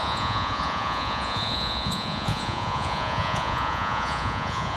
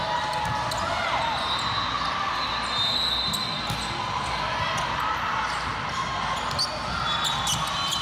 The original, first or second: second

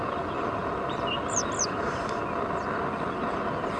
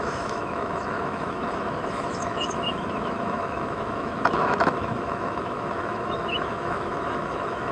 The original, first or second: first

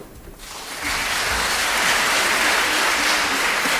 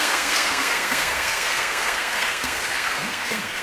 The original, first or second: first